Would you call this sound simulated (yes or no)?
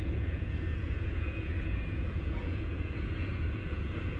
yes